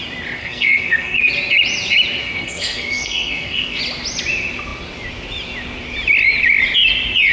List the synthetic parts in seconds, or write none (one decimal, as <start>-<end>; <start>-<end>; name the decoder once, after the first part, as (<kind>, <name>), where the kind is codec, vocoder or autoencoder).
0.4-1.3 (codec, SNAC); 2.2-3.8